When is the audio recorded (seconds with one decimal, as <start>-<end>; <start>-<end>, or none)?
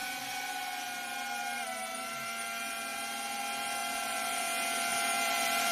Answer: 0.0-3.8; 4.4-4.9